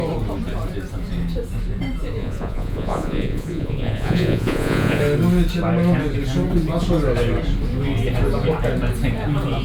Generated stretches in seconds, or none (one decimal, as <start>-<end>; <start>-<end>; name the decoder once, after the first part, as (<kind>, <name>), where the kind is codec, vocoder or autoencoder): 2.2-5.0 (vocoder, Vocos)